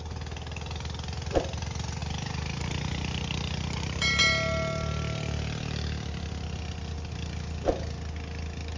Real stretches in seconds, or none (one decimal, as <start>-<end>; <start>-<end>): 0.0-8.8